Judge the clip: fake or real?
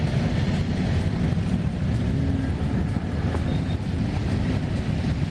real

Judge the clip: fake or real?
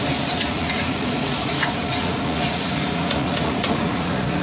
fake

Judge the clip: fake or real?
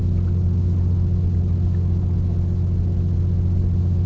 real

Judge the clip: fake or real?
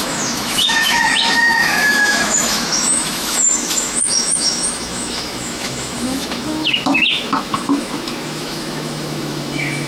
fake